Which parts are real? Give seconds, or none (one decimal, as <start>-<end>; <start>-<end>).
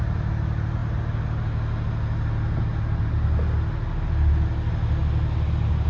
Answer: 0.0-5.9